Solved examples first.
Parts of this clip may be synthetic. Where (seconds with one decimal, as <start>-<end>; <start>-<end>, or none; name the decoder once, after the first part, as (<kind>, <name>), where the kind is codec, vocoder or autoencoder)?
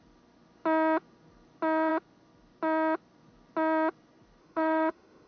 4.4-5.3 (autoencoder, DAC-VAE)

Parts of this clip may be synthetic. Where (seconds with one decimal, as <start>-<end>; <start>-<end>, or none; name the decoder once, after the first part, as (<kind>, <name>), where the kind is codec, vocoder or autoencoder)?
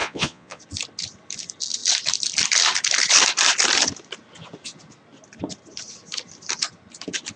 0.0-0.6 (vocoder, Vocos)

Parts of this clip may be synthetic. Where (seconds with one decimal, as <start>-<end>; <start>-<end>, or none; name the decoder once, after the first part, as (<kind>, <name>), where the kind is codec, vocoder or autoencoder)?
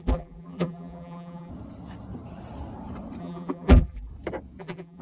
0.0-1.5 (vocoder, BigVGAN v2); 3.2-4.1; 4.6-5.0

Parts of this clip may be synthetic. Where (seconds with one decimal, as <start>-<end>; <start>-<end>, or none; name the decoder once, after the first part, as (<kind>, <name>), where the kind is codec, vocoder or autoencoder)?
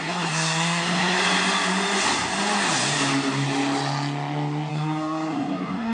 0.0-1.2 (codec, SNAC); 4.7-5.9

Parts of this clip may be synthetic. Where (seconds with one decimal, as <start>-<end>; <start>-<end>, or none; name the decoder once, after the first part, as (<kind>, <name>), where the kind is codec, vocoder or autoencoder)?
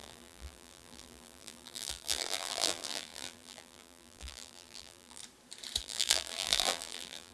0.0-5.2 (vocoder, BigVGAN v2); 5.8-7.3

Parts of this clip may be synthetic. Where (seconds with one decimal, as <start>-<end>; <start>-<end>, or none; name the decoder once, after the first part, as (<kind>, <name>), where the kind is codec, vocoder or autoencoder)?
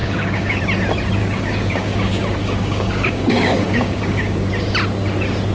0.0-0.6 (codec, DAC); 1.2-4.5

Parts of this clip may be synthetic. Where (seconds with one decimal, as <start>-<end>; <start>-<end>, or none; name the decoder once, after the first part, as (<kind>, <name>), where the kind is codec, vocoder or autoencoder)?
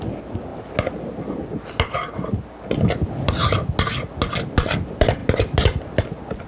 none